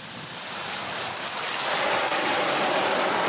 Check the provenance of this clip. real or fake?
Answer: real